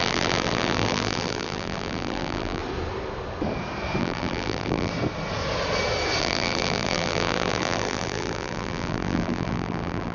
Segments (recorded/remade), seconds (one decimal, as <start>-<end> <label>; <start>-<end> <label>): 0.0-2.6 remade; 2.6-4.0 recorded; 4.0-4.9 remade; 4.9-6.2 recorded; 6.2-10.1 remade